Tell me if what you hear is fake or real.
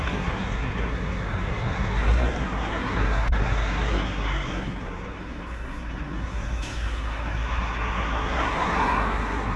fake